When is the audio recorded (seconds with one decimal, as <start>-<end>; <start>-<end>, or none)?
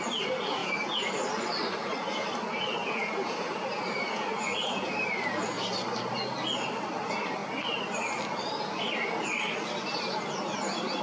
0.0-0.6; 1.1-2.8; 4.9-11.0